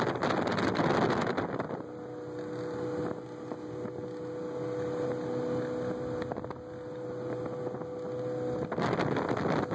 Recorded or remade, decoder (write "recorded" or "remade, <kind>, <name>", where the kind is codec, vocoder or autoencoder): recorded